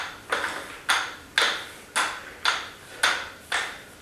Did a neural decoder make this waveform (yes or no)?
no